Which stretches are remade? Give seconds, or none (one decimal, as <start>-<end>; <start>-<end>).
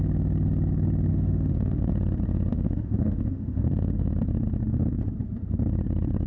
1.1-1.9; 2.5-4.1